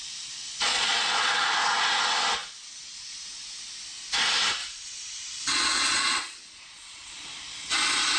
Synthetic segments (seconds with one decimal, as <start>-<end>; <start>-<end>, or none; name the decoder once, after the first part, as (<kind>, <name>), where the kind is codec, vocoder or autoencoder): 0.7-1.6 (vocoder, Vocos); 2.4-3.1; 4.6-7.1